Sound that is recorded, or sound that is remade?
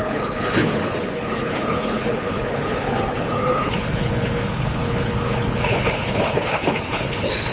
remade